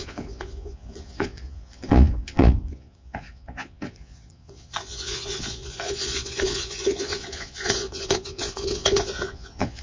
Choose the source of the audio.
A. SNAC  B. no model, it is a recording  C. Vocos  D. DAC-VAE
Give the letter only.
C